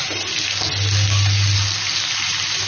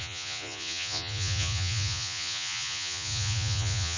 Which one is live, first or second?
first